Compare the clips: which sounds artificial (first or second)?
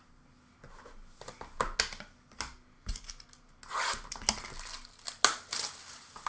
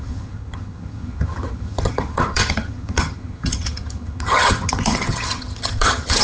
second